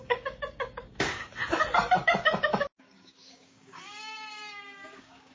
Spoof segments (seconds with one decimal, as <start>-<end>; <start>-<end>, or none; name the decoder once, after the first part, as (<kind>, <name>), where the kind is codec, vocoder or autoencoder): 0.0-1.3 (codec, DAC); 2.8-5.3